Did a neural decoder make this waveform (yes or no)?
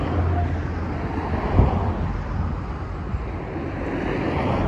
no